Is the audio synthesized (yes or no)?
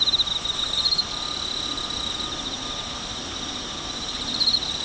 no